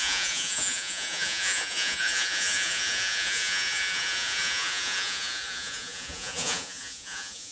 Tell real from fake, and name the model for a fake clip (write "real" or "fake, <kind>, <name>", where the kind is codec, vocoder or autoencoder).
fake, vocoder, Vocos